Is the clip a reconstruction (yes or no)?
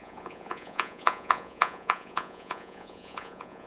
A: yes